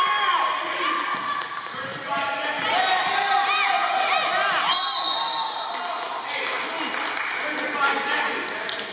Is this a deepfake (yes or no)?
no